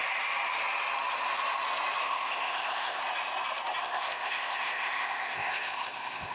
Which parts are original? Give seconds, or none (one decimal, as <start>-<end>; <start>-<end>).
0.0-2.0; 3.0-3.8